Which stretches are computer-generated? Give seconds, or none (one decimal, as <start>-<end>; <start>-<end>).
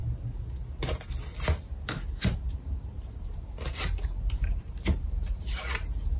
2.5-6.2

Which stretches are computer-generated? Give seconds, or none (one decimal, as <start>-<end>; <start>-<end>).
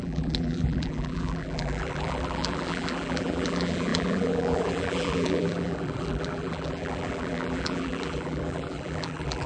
0.0-9.5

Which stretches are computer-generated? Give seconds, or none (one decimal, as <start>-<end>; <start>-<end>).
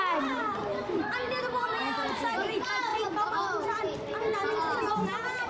0.0-5.5